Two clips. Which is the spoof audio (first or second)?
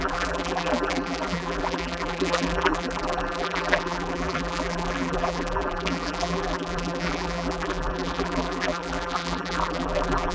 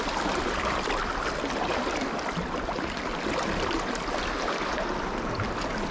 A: first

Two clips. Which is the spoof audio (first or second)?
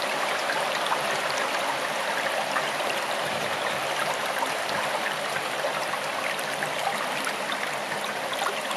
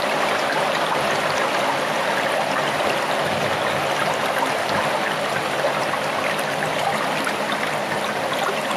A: first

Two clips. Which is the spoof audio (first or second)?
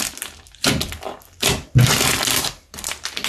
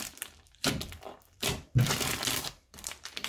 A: second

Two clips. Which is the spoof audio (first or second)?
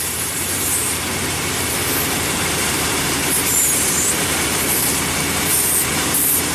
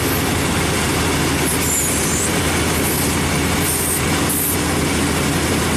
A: first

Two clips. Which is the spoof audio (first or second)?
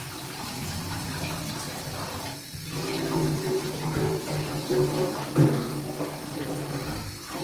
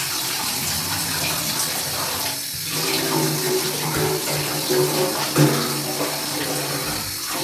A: first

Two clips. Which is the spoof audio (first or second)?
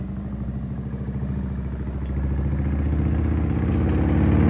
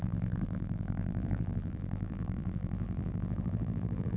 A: second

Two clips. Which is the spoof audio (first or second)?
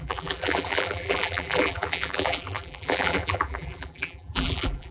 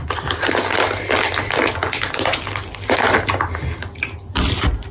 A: first